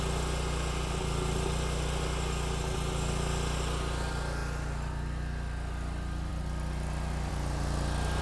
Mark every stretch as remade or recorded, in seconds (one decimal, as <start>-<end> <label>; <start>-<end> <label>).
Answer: 0.0-8.2 recorded